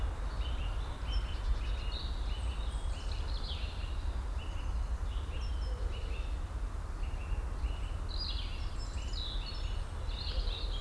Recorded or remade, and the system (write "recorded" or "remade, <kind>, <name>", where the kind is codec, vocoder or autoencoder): recorded